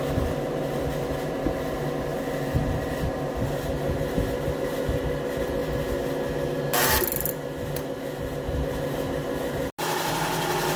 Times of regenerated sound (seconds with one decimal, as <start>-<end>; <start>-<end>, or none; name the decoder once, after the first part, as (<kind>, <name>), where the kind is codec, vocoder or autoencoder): none